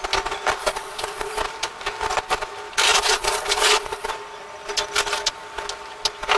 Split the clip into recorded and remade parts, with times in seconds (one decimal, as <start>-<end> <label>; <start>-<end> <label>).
0.0-0.6 recorded; 0.6-1.4 remade; 1.4-2.9 recorded; 2.9-4.1 remade; 4.1-6.4 recorded